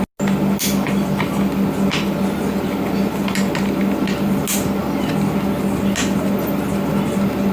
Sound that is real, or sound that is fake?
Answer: real